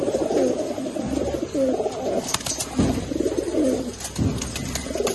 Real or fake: real